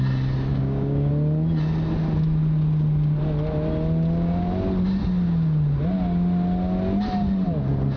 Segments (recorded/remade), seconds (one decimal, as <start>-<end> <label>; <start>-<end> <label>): 0.0-0.5 recorded; 0.5-1.1 remade; 1.1-8.0 recorded